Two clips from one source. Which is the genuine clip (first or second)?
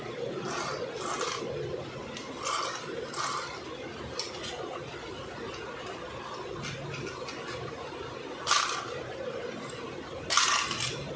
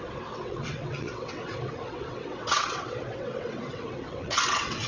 first